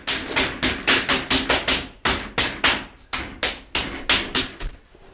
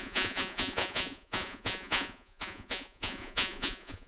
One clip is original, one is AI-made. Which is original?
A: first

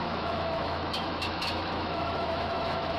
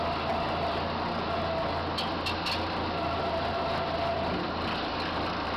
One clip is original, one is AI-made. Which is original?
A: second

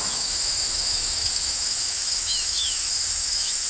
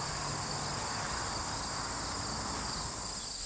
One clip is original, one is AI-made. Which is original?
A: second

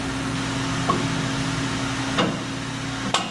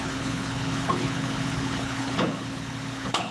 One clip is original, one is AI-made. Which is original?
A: first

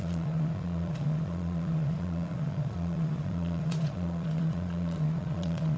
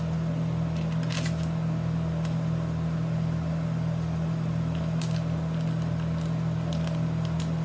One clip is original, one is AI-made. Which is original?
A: second